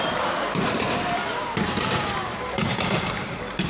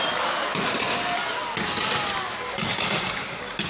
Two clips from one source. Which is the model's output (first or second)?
first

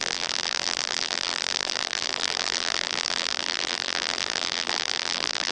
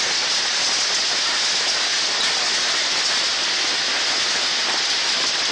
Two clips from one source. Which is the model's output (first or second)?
first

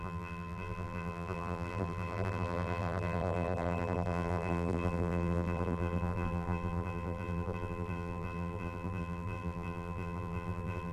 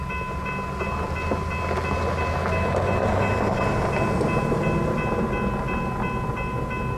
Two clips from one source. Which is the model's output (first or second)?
first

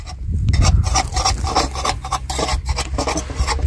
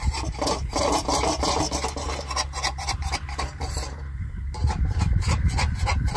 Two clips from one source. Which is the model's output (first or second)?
second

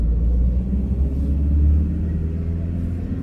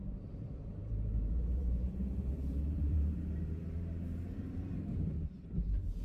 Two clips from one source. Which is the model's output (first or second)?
second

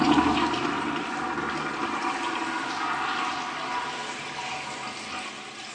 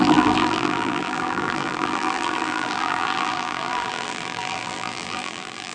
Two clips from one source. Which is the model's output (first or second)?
second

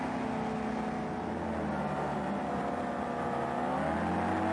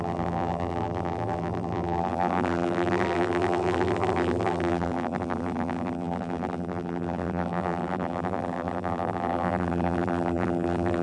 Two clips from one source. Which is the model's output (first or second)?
second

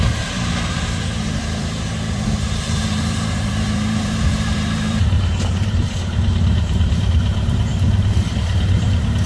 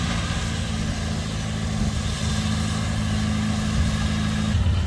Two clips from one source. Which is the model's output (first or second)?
first